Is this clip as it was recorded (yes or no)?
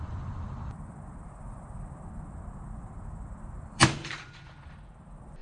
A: no